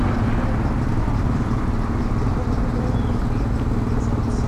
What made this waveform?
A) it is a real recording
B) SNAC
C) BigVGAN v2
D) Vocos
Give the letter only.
A